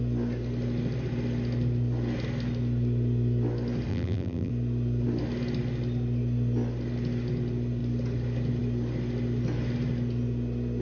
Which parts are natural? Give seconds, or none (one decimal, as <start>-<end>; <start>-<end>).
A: 0.0-3.9; 4.5-10.8